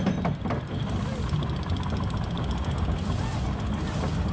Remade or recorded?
recorded